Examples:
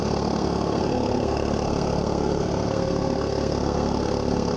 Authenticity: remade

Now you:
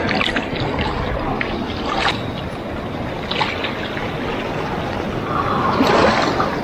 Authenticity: recorded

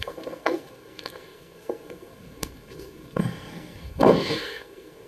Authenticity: remade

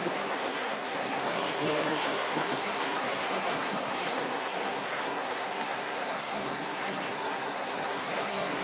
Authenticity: remade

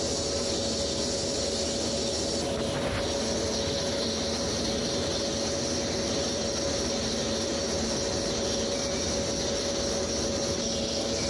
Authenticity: recorded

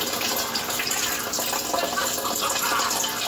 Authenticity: recorded